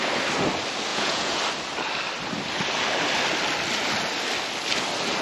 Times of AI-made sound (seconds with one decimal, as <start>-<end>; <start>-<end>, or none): 0.9-1.4